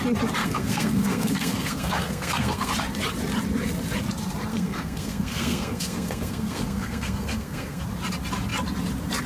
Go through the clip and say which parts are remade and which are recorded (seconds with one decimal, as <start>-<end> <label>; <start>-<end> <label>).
0.0-0.4 recorded; 0.4-2.7 remade; 2.7-4.5 recorded; 4.5-7.8 remade; 7.8-9.3 recorded

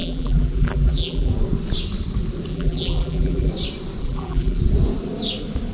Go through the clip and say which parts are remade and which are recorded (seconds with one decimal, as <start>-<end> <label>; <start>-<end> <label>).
0.0-1.3 remade; 1.3-2.5 recorded; 2.5-3.5 remade; 3.5-4.0 recorded; 4.0-4.6 remade; 4.6-5.7 recorded

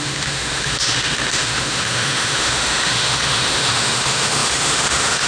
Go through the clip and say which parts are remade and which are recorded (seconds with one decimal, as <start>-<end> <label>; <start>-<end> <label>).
0.0-5.3 remade

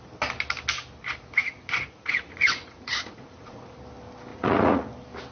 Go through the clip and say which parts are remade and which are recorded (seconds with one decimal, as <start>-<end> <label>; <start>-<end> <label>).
0.0-1.4 recorded; 1.4-3.8 remade; 3.8-4.3 recorded; 4.3-4.8 remade; 4.8-5.3 recorded

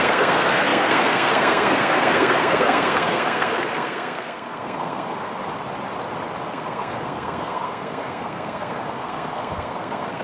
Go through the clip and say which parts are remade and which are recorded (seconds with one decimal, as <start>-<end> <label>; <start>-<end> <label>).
0.0-5.4 remade; 5.4-6.5 recorded; 6.5-10.2 remade

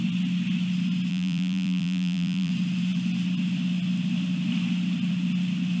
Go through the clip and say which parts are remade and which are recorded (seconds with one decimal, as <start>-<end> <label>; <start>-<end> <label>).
0.0-1.1 recorded; 1.1-2.5 remade; 2.5-5.8 recorded

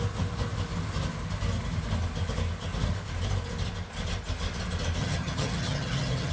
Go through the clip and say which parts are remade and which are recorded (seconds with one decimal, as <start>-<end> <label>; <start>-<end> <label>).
0.0-5.0 recorded; 5.0-6.3 remade